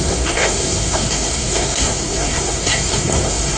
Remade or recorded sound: remade